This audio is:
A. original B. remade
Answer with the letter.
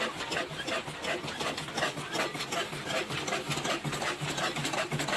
A